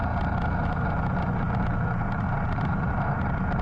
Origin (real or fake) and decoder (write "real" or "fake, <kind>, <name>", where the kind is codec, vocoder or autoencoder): real